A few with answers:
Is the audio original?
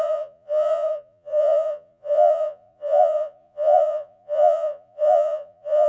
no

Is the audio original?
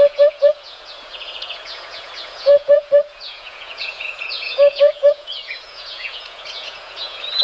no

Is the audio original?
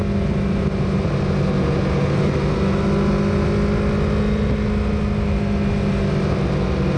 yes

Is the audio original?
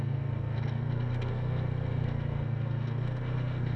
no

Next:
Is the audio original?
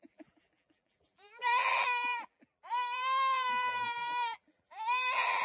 no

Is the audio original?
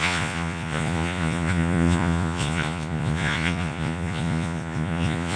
no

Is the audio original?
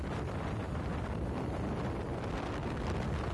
yes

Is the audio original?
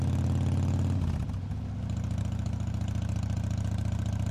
yes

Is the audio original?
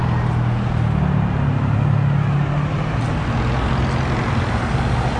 yes